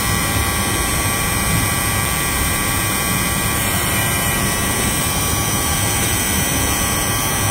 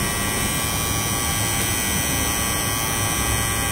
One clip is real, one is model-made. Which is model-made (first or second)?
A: first